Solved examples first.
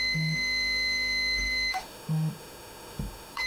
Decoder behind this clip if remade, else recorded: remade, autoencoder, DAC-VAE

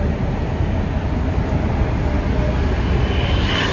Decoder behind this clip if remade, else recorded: recorded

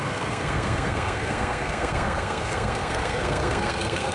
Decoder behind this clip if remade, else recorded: remade, codec, SNAC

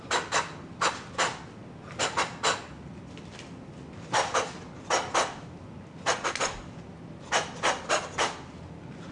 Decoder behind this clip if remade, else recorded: recorded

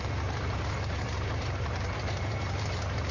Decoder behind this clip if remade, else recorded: remade, vocoder, BigVGAN v2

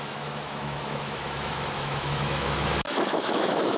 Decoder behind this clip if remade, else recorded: remade, autoencoder, DAC-VAE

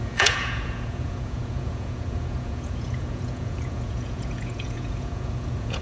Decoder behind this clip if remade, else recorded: remade, vocoder, Vocos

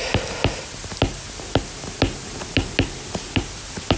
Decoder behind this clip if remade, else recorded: recorded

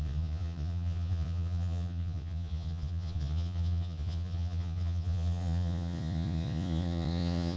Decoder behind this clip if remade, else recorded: remade, vocoder, Vocos